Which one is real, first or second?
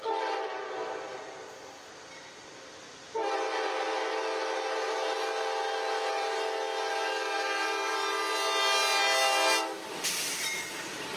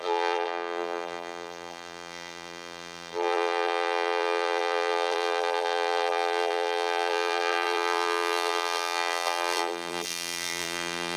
first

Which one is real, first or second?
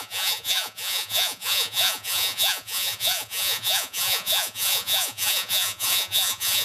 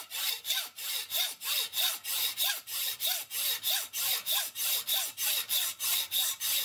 second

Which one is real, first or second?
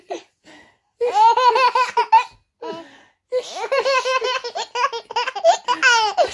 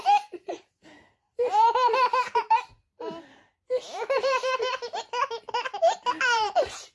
first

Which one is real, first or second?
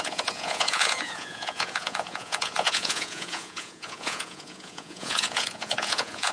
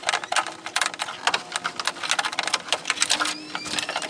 second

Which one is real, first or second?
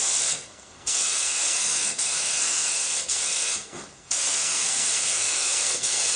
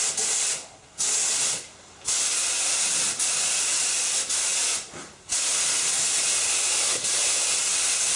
second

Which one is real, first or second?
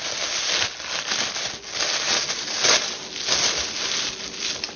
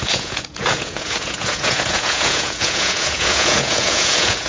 first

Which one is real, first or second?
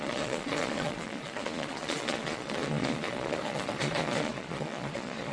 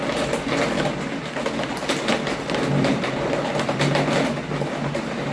second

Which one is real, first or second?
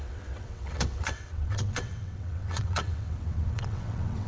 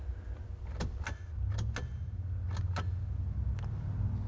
second